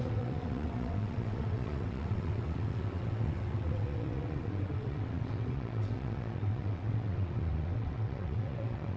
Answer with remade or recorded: remade